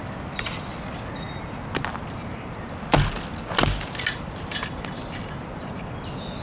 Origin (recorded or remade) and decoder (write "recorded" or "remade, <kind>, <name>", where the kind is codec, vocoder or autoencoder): recorded